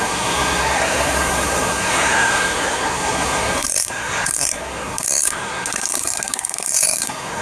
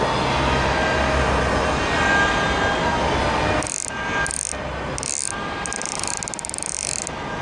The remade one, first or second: first